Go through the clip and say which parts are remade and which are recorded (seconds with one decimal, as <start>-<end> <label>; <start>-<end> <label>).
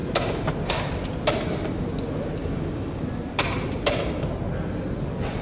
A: 0.0-2.4 recorded; 2.4-3.0 remade; 3.0-5.4 recorded